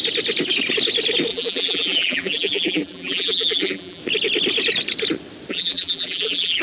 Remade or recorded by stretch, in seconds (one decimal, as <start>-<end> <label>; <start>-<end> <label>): 0.0-1.3 recorded; 1.3-4.0 remade; 4.0-5.5 recorded; 5.5-6.6 remade